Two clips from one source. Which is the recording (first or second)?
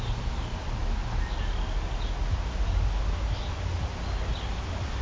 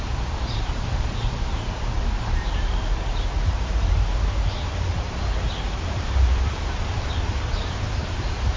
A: first